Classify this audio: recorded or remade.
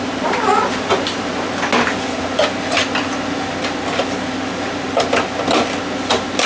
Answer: recorded